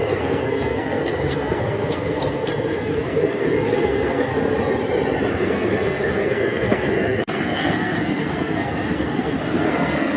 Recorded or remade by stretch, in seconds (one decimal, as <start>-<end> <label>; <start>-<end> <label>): 0.0-4.3 remade; 4.3-5.3 recorded; 5.3-10.2 remade